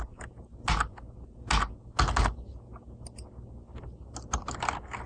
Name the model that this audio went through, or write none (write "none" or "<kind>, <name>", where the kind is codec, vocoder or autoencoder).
none